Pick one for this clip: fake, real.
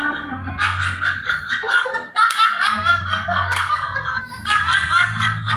fake